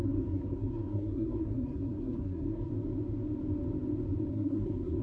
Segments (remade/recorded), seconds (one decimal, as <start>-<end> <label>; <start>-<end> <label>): 0.0-2.7 remade; 2.7-4.3 recorded; 4.3-5.0 remade